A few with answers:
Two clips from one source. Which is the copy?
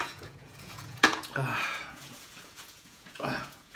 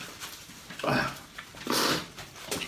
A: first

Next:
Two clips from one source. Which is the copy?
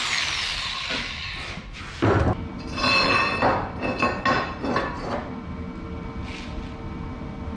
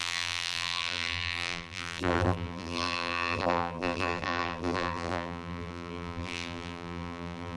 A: second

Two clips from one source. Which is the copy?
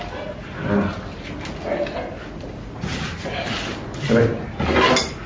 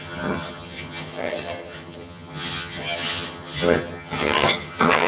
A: second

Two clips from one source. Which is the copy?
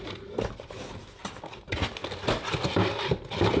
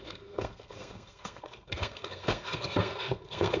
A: second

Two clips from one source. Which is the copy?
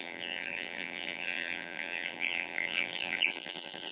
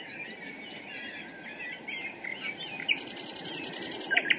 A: first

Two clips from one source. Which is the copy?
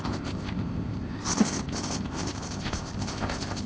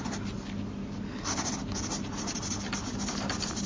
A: first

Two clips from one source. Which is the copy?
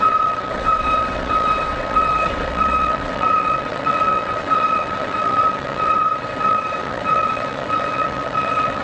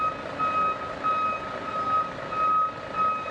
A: first